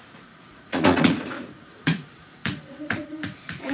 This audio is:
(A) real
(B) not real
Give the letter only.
B